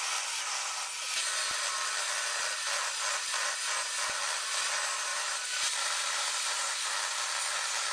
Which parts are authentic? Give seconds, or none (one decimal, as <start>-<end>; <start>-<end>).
0.0-5.1; 6.8-7.9